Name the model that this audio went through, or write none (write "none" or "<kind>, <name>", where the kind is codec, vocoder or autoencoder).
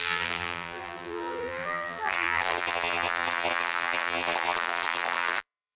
vocoder, BigVGAN v2